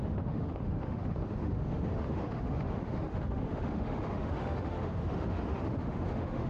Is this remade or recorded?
remade